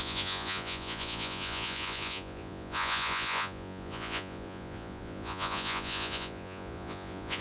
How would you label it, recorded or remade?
remade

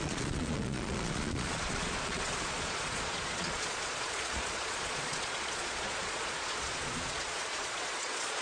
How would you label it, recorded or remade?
remade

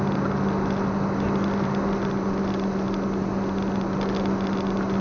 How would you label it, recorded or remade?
recorded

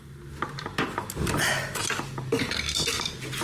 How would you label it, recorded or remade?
recorded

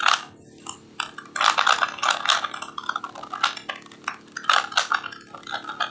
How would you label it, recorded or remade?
recorded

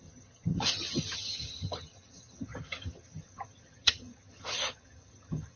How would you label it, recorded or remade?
remade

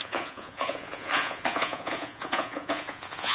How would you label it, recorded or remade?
remade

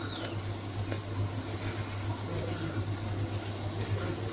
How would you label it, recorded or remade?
recorded